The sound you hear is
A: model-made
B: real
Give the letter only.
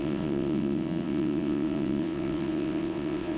A